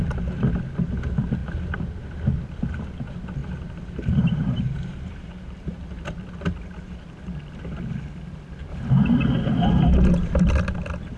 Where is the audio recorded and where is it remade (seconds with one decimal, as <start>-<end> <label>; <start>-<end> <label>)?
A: 0.0-3.4 recorded; 3.4-5.8 remade; 5.8-11.2 recorded